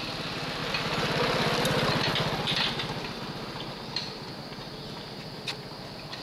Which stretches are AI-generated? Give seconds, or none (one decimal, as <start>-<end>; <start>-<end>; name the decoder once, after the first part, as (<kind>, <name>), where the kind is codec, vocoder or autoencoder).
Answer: none